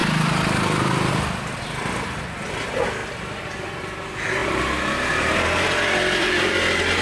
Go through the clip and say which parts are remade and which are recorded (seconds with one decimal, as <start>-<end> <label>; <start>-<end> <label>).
0.0-1.1 remade; 1.1-3.0 recorded; 3.0-3.6 remade; 3.6-4.4 recorded; 4.4-6.5 remade; 6.5-7.0 recorded